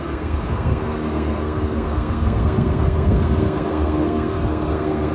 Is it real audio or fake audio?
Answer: fake